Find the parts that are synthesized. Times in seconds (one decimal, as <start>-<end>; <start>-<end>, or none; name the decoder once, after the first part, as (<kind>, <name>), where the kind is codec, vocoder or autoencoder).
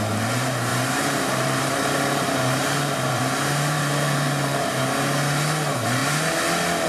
0.7-4.8 (vocoder, BigVGAN v2)